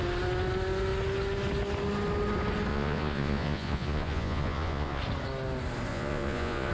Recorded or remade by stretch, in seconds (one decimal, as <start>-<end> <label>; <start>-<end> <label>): 0.0-2.7 recorded; 2.7-5.0 remade; 5.0-5.9 recorded; 5.9-6.7 remade